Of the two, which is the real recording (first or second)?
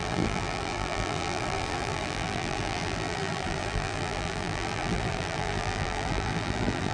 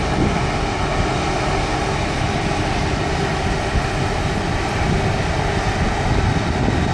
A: second